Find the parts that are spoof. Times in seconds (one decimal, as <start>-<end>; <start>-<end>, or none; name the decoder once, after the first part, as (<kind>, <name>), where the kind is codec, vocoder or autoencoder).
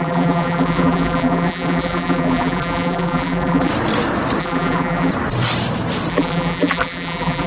0.0-3.7 (vocoder, BigVGAN v2); 4.4-5.1; 6.1-7.5